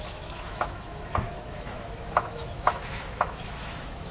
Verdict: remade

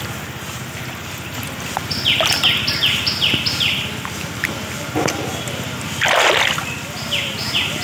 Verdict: recorded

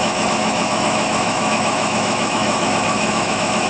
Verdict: remade